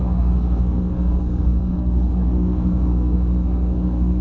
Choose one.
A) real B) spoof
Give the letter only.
B